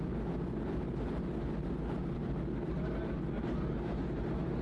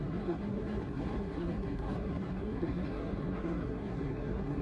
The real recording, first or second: first